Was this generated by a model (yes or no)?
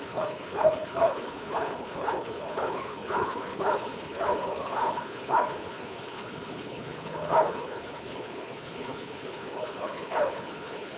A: yes